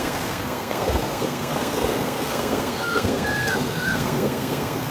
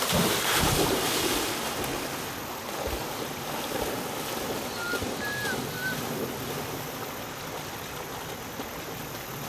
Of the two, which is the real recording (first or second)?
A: second